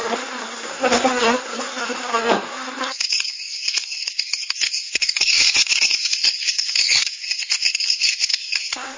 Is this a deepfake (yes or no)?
yes